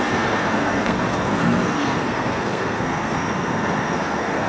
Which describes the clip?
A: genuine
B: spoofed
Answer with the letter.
B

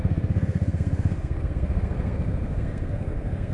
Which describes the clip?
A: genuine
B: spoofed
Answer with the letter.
B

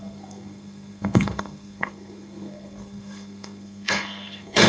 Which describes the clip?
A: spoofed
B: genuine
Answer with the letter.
A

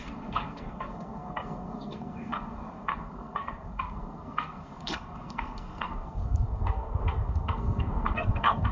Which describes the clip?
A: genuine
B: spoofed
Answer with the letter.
B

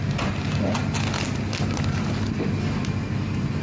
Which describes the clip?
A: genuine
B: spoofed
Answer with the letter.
A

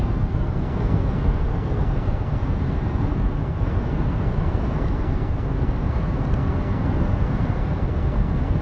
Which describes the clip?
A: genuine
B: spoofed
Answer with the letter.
B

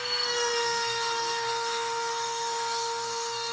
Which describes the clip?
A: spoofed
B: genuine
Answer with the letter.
A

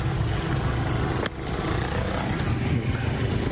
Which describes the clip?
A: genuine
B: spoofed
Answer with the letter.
A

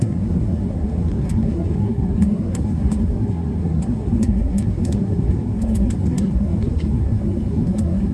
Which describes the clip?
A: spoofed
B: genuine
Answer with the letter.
A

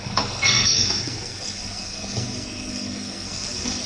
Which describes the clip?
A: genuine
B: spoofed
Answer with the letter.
B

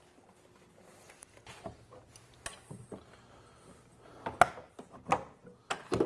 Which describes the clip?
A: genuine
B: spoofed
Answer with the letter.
A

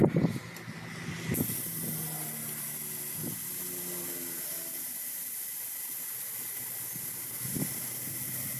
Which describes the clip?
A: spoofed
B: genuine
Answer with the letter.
B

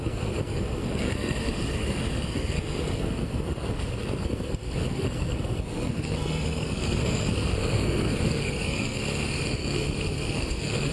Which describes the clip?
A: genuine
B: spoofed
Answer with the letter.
B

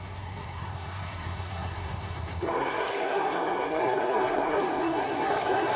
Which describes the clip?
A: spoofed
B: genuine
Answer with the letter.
A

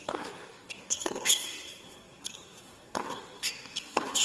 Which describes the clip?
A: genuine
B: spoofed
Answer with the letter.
B